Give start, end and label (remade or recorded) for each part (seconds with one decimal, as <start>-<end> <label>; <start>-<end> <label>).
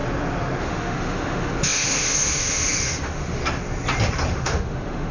0.0-0.6 recorded; 0.6-3.4 remade; 3.4-4.3 recorded; 4.3-5.1 remade